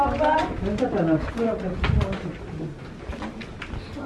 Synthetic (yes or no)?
no